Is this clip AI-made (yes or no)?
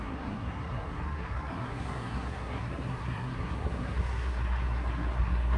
yes